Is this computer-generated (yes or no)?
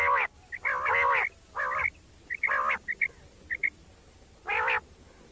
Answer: no